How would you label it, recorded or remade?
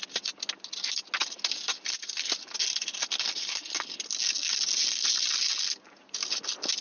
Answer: recorded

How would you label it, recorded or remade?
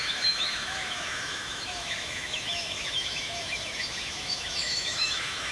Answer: remade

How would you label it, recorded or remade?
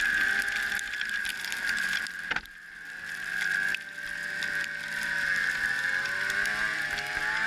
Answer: recorded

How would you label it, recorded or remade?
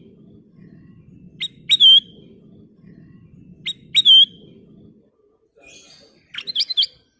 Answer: recorded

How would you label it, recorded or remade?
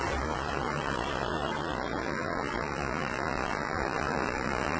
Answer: remade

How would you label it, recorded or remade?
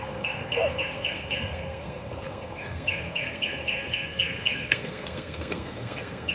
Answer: remade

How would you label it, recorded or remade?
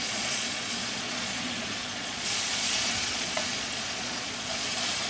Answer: remade